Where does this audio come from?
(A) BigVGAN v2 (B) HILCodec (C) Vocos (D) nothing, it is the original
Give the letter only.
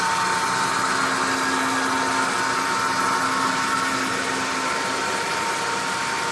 D